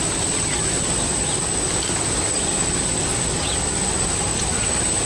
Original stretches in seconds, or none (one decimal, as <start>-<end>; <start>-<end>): 0.0-5.1